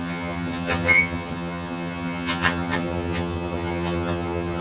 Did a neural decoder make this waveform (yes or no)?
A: yes